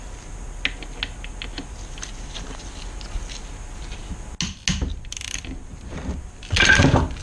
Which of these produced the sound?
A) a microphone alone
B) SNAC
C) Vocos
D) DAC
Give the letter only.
A